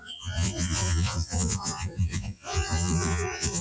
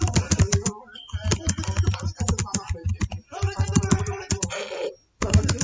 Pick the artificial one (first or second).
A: first